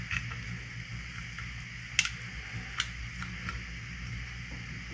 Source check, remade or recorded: recorded